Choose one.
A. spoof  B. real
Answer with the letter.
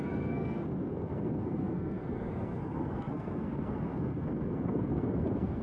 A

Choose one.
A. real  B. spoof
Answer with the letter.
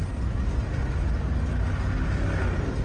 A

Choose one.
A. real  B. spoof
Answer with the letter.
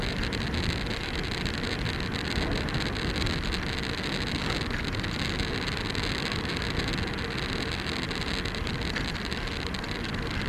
A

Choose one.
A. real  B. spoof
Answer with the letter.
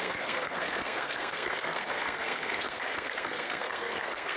B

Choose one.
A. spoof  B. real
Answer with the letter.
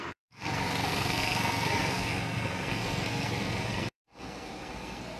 A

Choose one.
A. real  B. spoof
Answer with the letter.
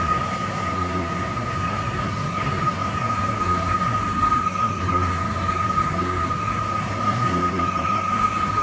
B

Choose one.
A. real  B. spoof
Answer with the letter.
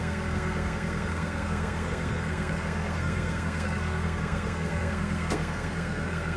B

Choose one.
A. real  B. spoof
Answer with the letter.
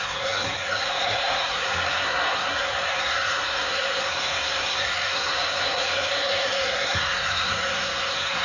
B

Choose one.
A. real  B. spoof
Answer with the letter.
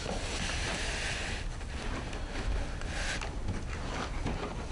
A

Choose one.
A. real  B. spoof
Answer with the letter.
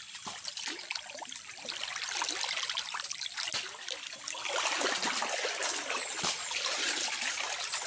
A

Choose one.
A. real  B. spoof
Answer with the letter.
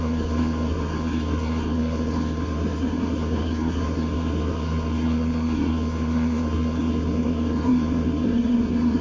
B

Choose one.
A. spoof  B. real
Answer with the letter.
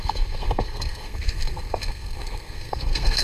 A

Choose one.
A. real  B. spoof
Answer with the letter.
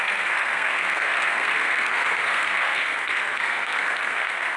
B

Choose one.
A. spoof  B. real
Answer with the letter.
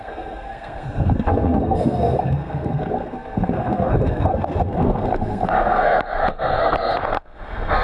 A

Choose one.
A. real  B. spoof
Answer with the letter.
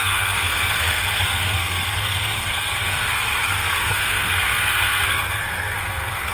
B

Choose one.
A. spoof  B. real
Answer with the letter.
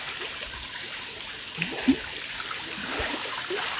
B